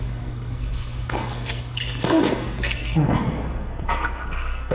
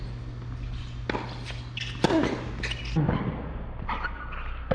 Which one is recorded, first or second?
second